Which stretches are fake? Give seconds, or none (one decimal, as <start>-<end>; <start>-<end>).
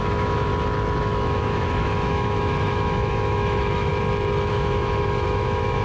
0.0-0.5; 1.0-3.9; 4.5-5.8